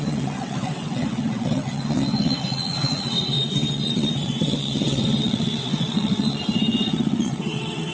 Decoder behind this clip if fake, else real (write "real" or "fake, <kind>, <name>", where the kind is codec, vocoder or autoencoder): fake, vocoder, WaveNeXt